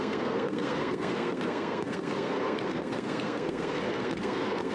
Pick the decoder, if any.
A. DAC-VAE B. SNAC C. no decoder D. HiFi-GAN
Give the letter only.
B